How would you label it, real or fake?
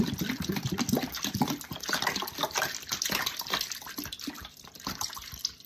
real